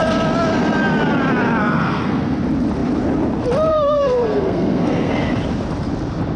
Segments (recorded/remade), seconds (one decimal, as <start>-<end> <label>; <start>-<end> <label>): 0.0-1.6 recorded; 1.6-2.4 remade; 2.4-3.7 recorded; 3.7-5.1 remade; 5.1-6.4 recorded